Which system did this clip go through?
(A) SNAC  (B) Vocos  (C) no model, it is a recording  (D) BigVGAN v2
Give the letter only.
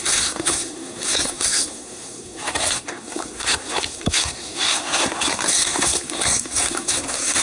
A